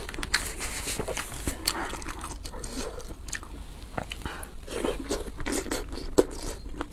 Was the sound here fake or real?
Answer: real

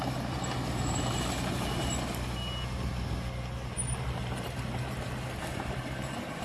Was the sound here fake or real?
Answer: real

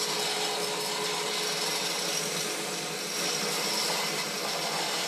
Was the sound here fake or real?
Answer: real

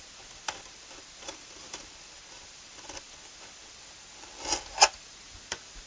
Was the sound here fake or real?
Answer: fake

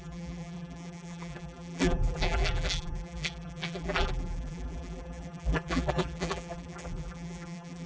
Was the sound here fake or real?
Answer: fake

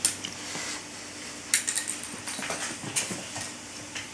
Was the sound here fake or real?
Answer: real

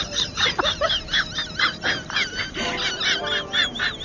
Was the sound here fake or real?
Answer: real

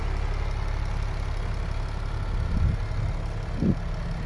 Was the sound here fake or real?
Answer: real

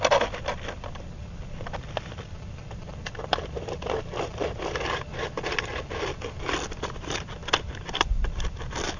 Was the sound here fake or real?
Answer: real